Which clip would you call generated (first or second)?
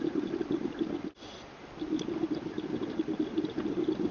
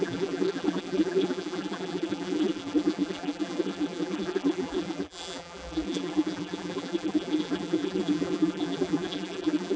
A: second